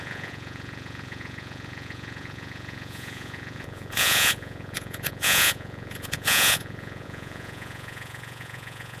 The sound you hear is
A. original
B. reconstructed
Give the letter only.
B